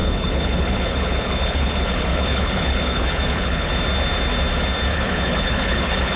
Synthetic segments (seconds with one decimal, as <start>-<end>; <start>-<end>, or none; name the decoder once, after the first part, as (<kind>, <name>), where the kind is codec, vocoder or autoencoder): 0.0-3.7 (codec, HILCodec); 4.9-6.2